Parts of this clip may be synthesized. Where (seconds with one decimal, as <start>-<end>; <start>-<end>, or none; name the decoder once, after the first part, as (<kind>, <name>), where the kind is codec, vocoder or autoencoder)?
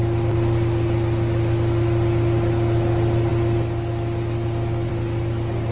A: none